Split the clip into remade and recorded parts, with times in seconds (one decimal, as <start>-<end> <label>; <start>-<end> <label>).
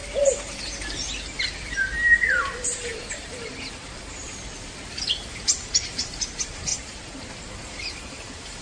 0.0-5.0 recorded; 5.0-6.7 remade; 6.7-7.5 recorded; 7.5-8.6 remade